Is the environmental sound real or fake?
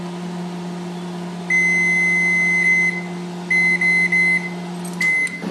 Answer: real